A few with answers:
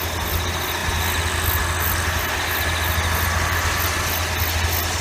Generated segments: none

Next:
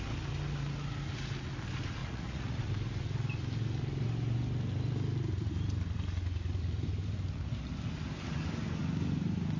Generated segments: 2.0-2.7 (vocoder, Vocos)

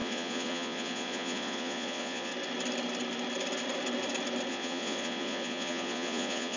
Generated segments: 0.0-2.3 (vocoder, Vocos); 4.5-6.6

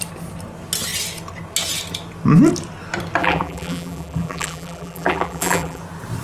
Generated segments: 3.2-5.8 (vocoder, BigVGAN v2)

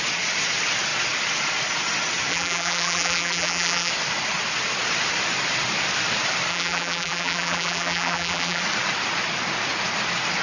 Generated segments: 2.3-3.9 (vocoder, BigVGAN v2); 6.5-8.6